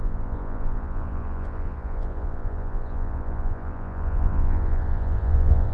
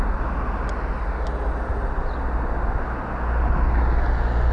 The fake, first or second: first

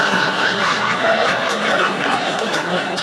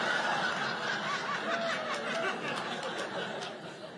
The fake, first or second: first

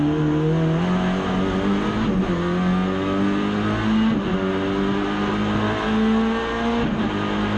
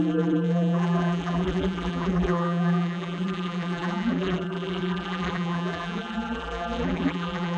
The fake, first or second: second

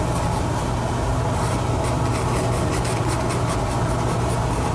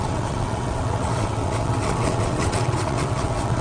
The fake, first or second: second